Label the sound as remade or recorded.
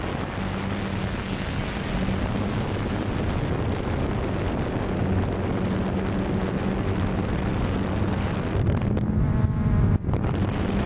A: recorded